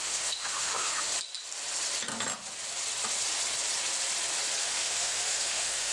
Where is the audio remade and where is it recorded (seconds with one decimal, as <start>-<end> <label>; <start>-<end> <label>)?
0.0-1.1 remade; 1.1-4.6 recorded; 4.6-5.9 remade